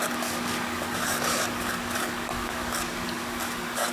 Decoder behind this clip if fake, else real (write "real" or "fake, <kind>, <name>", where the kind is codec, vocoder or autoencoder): fake, codec, DAC